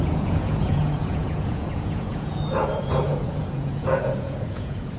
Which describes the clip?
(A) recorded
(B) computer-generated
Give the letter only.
B